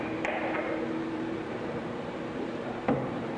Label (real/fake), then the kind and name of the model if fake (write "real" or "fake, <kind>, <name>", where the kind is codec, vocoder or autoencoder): fake, vocoder, BigVGAN v2